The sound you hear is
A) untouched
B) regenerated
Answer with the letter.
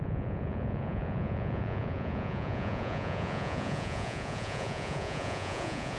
B